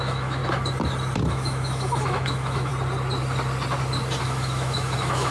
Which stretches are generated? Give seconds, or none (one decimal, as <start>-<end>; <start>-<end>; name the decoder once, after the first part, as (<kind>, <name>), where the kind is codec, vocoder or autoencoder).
0.0-0.4 (autoencoder, DAC-VAE); 1.3-2.7; 4.2-5.3